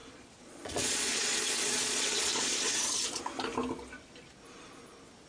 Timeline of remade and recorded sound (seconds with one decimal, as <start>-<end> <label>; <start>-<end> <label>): 0.0-3.2 remade; 3.2-5.3 recorded